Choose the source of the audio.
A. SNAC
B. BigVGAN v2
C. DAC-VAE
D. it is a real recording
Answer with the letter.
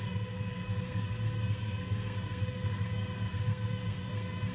A